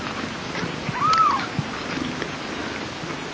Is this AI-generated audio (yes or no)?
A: no